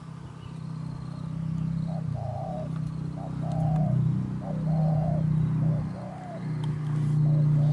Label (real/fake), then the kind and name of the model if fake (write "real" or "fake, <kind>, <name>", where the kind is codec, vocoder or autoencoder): real